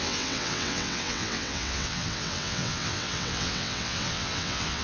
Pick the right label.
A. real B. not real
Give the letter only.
B